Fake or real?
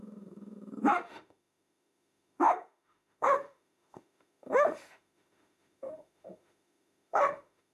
fake